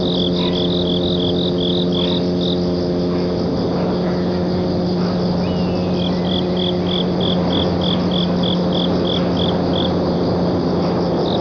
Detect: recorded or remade recorded